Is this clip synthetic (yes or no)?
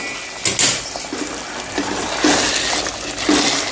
no